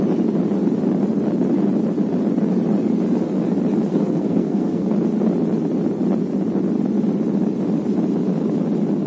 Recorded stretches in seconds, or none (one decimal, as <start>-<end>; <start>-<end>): 0.0-3.9; 4.9-9.1